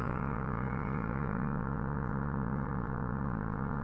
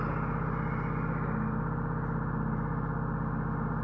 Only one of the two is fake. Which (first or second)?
first